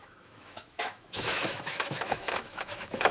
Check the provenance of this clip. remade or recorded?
remade